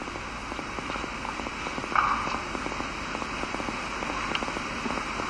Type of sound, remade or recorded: recorded